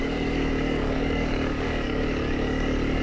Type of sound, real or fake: fake